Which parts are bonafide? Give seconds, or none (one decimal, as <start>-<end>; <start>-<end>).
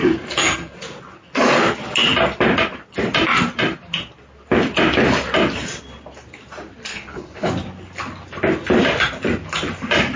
0.0-6.9; 7.5-10.2